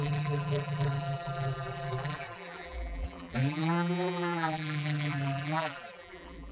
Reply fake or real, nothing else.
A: fake